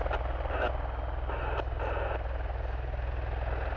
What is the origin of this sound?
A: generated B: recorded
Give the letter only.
B